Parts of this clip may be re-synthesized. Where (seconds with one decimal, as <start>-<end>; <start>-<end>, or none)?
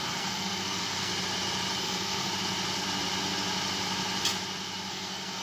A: 0.0-1.1; 1.8-2.3; 4.9-5.4